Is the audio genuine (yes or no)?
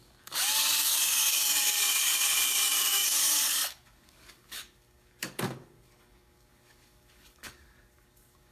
no